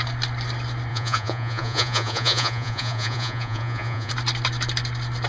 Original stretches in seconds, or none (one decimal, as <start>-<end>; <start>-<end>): 0.0-0.9; 4.1-5.3